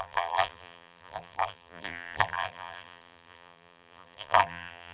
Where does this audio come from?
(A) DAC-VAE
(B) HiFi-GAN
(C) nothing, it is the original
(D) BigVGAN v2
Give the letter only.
D